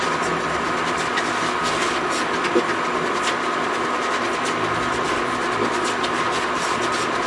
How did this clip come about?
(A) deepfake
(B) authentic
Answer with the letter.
B